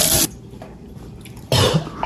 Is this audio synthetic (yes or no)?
no